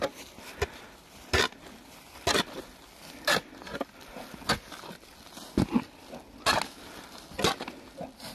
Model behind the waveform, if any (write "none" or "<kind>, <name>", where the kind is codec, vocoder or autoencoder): none